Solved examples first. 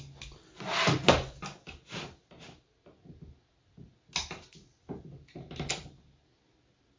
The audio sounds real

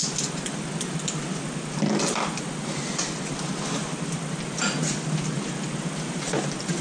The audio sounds real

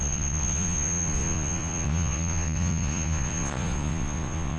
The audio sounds fake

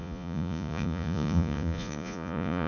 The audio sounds fake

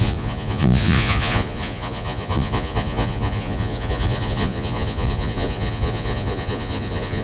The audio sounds fake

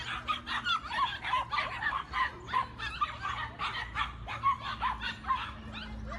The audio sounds real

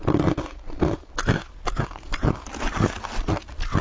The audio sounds real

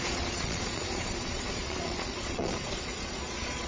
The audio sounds fake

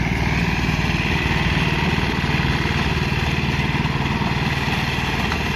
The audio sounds real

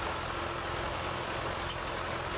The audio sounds real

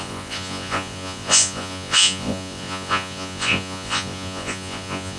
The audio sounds fake